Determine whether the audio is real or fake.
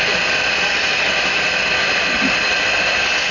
real